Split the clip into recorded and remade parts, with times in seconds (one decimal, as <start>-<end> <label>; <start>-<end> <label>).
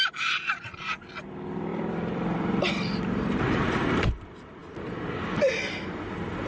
0.0-1.7 recorded; 1.7-4.1 remade; 4.1-6.5 recorded